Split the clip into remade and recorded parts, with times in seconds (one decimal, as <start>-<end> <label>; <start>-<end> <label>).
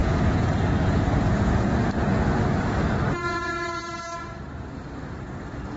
0.0-1.9 remade; 1.9-3.2 recorded; 3.2-3.8 remade; 3.8-5.8 recorded